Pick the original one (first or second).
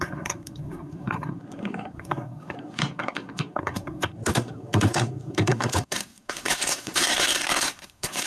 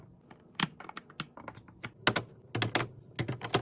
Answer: second